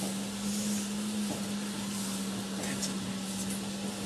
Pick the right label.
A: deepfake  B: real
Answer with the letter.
B